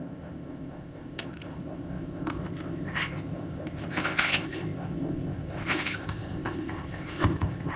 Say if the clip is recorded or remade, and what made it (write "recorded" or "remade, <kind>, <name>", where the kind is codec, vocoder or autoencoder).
remade, codec, ZipCodec